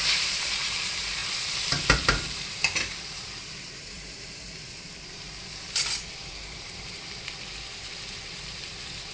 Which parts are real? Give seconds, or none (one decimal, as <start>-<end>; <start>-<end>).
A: none